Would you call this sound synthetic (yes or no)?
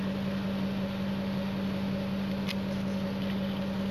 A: no